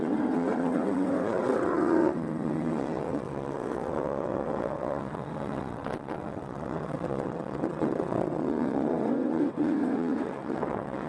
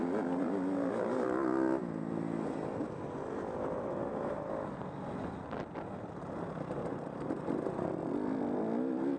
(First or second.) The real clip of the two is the second